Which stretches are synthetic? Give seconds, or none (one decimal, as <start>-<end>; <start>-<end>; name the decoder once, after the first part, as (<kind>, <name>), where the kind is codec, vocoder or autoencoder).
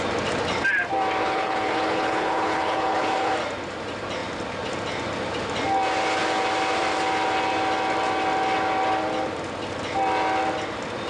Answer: 1.2-3.3 (codec, HILCodec)